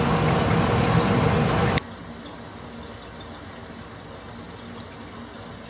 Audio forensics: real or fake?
real